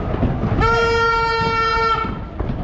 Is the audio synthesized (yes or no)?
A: no